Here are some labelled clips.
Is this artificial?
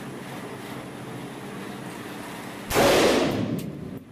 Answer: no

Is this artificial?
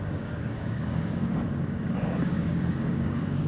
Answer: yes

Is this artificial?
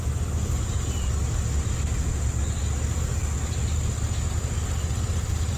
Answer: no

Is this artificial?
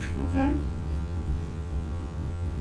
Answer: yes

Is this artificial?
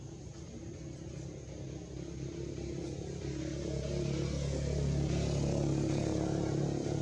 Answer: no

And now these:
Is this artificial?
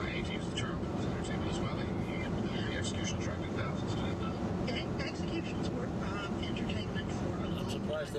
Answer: no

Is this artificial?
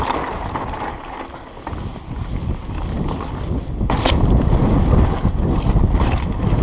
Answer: no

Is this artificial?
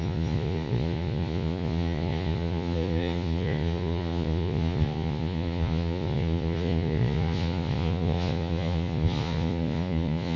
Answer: yes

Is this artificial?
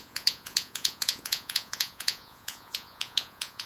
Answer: yes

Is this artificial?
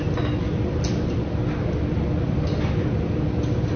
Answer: no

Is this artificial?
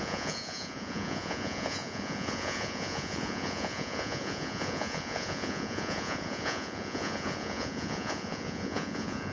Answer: yes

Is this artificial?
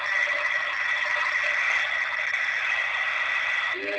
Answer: no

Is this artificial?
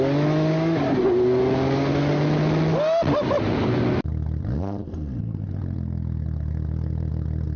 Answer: no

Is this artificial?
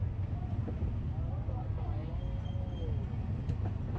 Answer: no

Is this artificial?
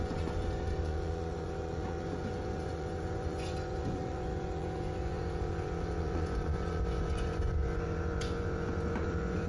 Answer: yes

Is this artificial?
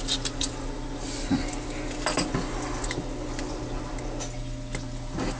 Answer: no